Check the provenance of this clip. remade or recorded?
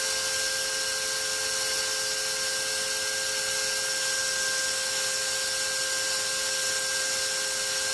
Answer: recorded